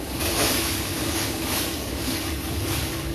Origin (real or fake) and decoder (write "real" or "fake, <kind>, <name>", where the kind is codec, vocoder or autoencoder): fake, codec, DAC